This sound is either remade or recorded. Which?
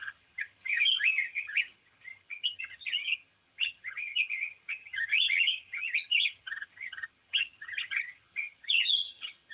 remade